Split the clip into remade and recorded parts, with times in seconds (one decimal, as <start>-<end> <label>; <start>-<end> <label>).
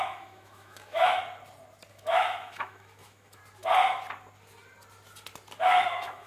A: 0.0-1.2 remade; 1.2-1.9 recorded; 1.9-3.4 remade; 3.4-5.6 recorded; 5.6-6.3 remade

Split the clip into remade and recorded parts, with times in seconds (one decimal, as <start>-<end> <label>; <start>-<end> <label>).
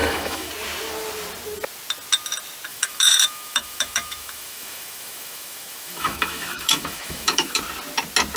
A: 0.0-0.5 remade; 0.5-2.7 recorded; 2.7-7.6 remade; 7.6-8.4 recorded